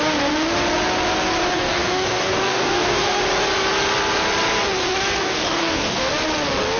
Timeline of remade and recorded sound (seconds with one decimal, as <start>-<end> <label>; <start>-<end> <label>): 0.0-1.5 recorded; 1.5-3.2 remade; 3.2-5.2 recorded; 5.2-6.1 remade; 6.1-6.8 recorded